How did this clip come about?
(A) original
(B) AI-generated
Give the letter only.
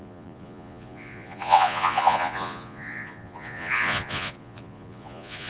B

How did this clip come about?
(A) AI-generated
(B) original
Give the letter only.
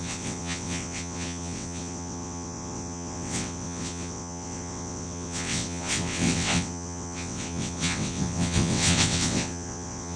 A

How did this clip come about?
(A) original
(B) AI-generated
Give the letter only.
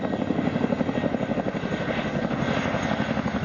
A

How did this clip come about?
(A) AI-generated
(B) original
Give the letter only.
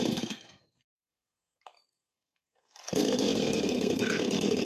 A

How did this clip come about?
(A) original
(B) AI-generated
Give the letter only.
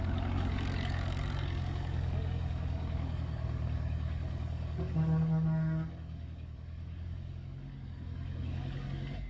B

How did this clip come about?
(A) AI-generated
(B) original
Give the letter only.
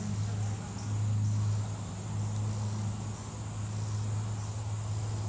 B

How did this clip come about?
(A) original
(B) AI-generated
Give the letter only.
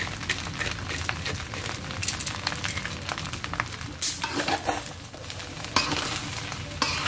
A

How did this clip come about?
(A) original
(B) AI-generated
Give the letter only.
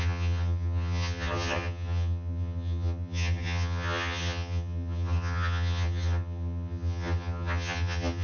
B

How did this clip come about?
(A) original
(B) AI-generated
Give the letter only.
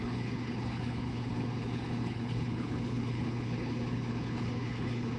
B